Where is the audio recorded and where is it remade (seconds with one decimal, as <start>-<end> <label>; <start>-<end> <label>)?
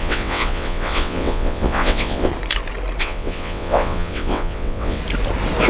0.0-2.3 remade; 2.3-3.0 recorded; 3.0-5.0 remade; 5.0-5.7 recorded